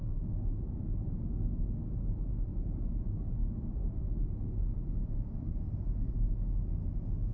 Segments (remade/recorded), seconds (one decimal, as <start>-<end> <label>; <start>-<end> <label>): 0.0-3.4 recorded; 3.4-4.0 remade; 4.0-5.0 recorded; 5.0-5.7 remade; 5.7-7.3 recorded